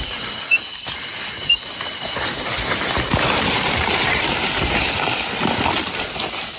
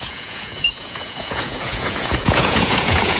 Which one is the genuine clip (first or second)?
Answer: first